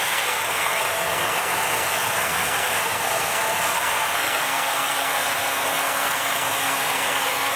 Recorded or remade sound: remade